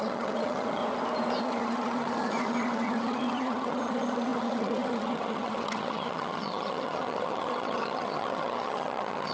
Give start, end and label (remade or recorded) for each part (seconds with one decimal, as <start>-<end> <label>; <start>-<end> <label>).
0.0-0.8 remade; 0.8-1.4 recorded; 1.4-9.3 remade